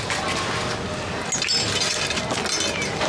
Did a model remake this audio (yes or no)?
no